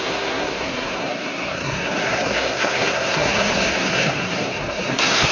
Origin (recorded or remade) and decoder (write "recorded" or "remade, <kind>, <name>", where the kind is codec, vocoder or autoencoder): remade, codec, SNAC